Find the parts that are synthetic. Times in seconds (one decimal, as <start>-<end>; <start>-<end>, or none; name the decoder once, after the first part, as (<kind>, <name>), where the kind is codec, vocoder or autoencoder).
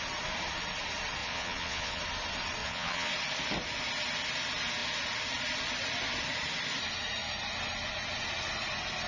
1.2-2.0 (vocoder, Vocos); 2.6-3.1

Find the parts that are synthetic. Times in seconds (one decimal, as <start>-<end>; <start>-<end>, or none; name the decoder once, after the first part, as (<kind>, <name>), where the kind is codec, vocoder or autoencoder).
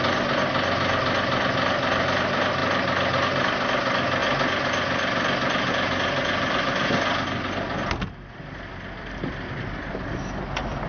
none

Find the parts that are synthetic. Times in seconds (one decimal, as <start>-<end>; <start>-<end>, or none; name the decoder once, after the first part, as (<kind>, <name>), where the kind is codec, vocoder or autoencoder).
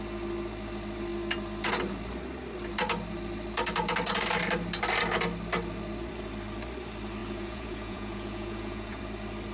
7.2-9.0 (vocoder, Vocos)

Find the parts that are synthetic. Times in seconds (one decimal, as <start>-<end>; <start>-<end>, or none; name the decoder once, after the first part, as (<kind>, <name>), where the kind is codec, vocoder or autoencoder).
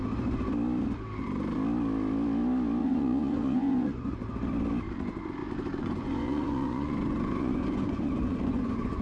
2.8-4.2 (vocoder, Vocos); 5.4-9.0